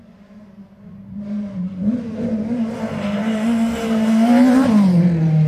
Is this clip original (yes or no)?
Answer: yes